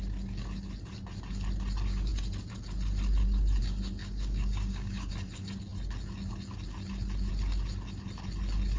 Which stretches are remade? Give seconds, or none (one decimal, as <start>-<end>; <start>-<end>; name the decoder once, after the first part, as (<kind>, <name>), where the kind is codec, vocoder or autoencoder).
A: 4.0-5.1 (codec, DAC)